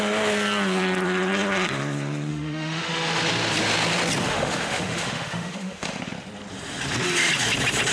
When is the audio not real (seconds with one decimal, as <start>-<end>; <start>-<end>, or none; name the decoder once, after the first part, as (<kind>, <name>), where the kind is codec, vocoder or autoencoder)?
2.3-3.2 (autoencoder, DAC-VAE); 4.2-6.0